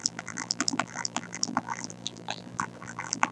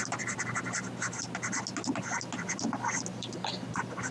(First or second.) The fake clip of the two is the first